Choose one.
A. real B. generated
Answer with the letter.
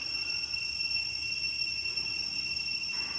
A